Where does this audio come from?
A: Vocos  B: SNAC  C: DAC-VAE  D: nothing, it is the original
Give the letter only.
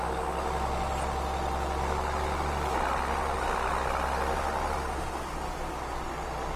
D